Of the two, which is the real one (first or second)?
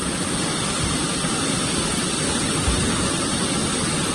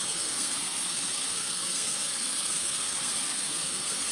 first